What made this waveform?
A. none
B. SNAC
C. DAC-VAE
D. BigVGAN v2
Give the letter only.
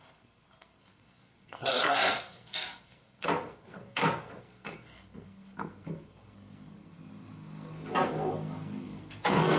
B